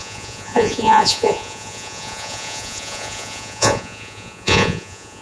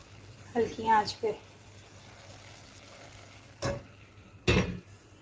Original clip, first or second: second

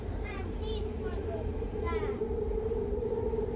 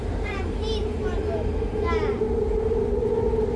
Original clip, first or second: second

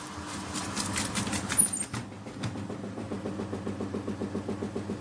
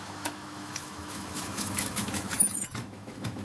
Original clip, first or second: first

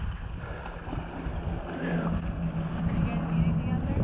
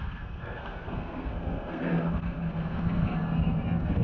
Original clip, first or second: first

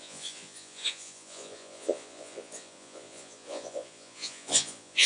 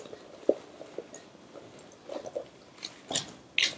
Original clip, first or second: second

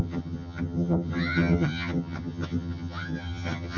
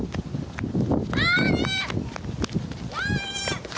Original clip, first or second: second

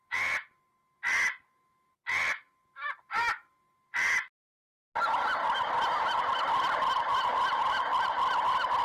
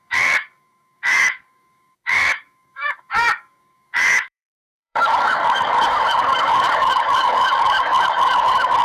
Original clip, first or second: first